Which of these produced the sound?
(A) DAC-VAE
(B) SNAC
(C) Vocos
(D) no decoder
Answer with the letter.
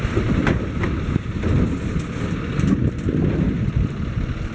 D